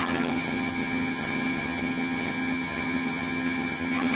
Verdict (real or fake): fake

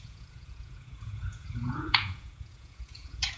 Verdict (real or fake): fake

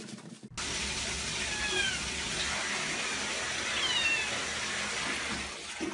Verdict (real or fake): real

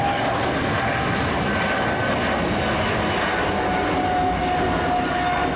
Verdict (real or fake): real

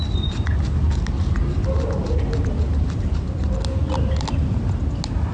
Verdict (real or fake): real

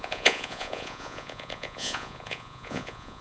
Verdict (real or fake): fake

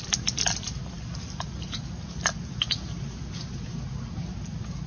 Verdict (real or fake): real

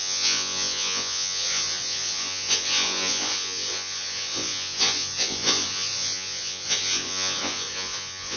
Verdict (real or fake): fake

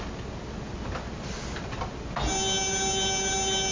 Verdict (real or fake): real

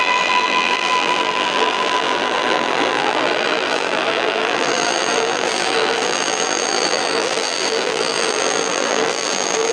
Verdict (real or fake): fake